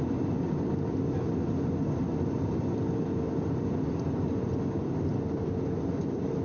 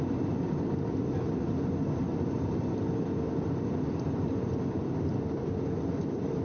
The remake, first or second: second